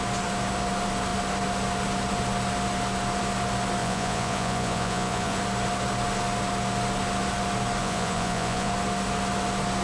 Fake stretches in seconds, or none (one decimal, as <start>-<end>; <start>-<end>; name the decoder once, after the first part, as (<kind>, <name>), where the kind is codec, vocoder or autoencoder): 3.8-5.4 (vocoder, Vocos); 7.8-8.7